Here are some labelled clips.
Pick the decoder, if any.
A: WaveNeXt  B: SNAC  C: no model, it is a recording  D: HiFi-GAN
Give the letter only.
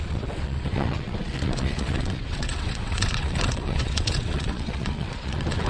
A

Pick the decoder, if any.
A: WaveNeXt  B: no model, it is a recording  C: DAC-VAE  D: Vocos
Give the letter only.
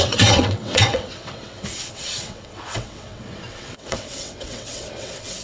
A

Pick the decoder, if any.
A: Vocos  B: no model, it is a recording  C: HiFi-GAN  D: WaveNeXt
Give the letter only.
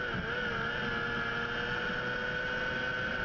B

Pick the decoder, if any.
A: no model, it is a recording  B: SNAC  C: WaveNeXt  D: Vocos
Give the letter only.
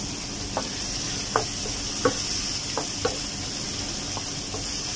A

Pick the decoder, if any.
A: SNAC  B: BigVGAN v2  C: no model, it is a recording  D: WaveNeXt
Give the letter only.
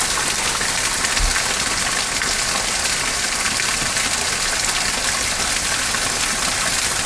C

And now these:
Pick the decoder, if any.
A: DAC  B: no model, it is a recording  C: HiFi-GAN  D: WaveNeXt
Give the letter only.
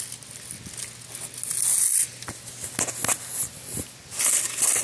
B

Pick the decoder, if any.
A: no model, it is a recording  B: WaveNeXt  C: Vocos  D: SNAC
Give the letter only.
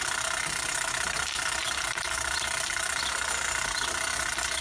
A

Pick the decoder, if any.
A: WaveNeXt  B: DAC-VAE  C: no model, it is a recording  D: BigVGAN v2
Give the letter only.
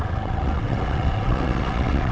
A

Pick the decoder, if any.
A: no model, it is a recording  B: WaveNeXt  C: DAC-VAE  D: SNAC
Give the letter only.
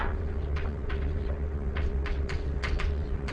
B